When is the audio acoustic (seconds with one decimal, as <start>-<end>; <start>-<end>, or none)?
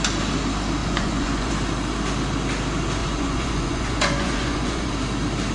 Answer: 0.0-0.8; 1.5-3.0; 4.9-5.5